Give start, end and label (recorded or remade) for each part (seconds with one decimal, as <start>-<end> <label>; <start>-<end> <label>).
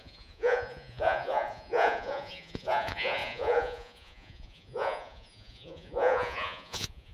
0.0-7.1 remade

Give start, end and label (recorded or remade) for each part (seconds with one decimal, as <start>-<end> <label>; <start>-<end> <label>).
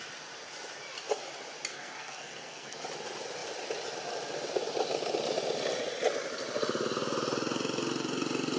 0.0-1.7 recorded; 1.7-2.8 remade; 2.8-8.6 recorded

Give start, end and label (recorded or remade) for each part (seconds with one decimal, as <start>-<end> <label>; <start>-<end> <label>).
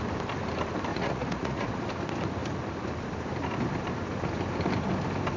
0.0-0.9 recorded; 0.9-1.8 remade; 1.8-5.4 recorded